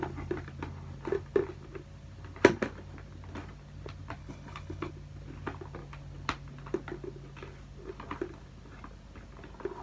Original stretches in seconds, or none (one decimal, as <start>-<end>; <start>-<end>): 0.0-4.2; 4.9-9.8